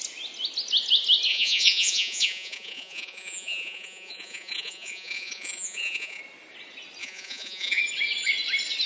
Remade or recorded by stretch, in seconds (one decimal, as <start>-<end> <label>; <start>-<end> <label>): 0.0-1.3 recorded; 1.3-6.2 remade; 6.2-7.0 recorded; 7.0-7.8 remade; 7.8-8.9 recorded